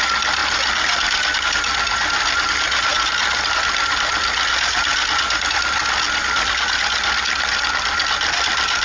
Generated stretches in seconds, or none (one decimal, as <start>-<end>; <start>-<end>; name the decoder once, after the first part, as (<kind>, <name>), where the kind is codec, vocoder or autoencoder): none